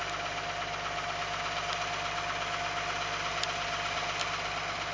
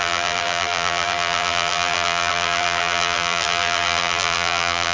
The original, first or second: first